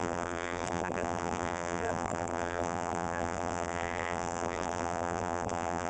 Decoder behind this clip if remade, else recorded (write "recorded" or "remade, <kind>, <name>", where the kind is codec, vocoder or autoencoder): remade, vocoder, BigVGAN v2